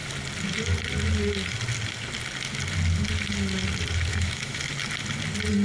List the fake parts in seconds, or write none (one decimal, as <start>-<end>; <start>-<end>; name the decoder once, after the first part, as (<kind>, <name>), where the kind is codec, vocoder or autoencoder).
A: 4.1-4.6 (autoencoder, DAC-VAE)